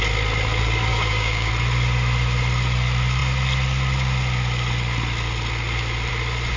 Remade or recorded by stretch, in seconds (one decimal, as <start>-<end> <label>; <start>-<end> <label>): 0.0-0.9 recorded; 0.9-1.5 remade; 1.5-6.6 recorded